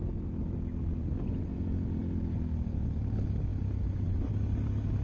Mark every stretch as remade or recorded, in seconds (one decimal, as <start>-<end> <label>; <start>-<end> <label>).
0.0-5.0 recorded